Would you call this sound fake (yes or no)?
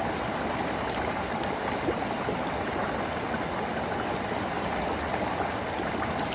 no